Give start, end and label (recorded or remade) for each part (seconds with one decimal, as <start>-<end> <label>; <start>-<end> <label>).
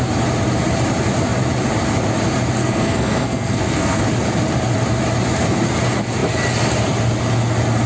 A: 0.0-2.6 recorded; 2.6-4.0 remade; 4.0-7.9 recorded